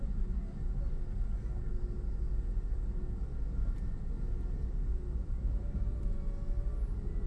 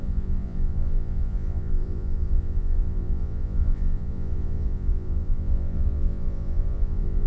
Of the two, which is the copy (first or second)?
second